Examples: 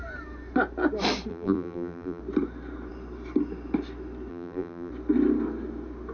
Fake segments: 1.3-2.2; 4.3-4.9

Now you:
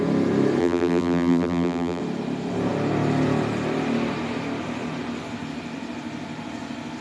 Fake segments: 0.6-2.0